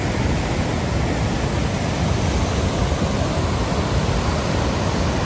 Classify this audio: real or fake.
real